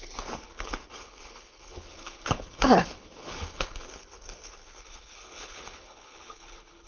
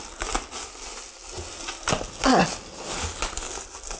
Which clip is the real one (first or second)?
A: second